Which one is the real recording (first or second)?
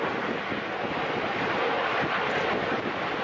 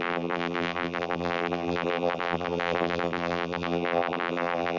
first